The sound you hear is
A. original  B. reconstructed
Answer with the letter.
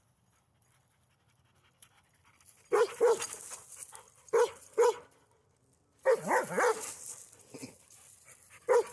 A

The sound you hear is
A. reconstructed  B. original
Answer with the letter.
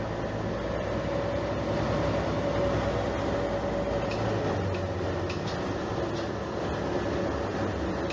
B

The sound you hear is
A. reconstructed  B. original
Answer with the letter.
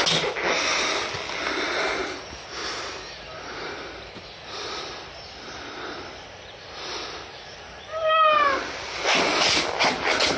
B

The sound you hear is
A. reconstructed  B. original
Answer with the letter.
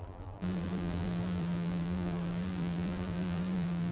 A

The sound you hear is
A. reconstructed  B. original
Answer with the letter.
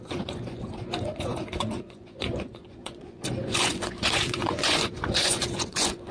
A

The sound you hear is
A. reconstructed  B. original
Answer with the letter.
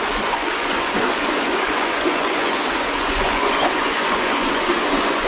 A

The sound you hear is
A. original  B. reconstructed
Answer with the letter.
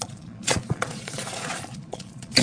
B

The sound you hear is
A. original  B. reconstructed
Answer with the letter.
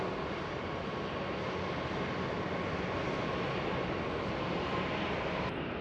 A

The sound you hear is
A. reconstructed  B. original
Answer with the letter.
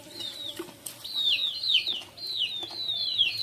B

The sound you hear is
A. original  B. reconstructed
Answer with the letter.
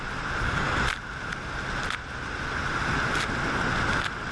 A